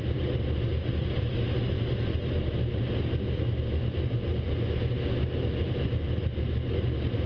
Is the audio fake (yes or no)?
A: no